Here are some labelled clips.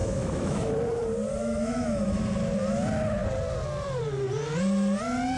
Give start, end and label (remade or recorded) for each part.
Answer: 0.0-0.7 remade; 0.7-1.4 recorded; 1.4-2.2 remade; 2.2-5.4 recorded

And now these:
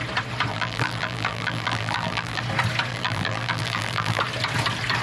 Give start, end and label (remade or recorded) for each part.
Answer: 0.0-0.5 recorded; 0.5-2.4 remade; 2.4-2.9 recorded; 2.9-4.2 remade; 4.2-5.0 recorded

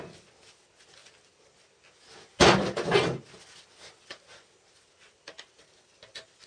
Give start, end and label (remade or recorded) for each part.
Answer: 0.0-6.5 recorded

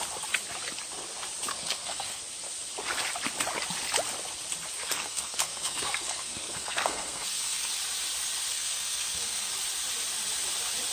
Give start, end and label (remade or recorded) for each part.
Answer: 0.0-1.5 recorded; 1.5-2.2 remade; 2.2-4.8 recorded; 4.8-7.7 remade; 7.7-8.5 recorded; 8.5-9.5 remade; 9.5-10.9 recorded

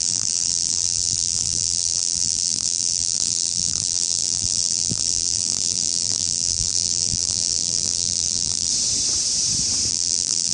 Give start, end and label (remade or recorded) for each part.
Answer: 0.0-8.7 remade; 8.7-9.9 recorded; 9.9-10.5 remade